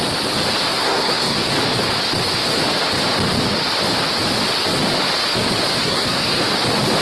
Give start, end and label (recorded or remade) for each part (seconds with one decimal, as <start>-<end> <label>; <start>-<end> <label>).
0.0-0.7 recorded; 0.7-1.5 remade; 1.5-5.8 recorded; 5.8-6.4 remade; 6.4-7.0 recorded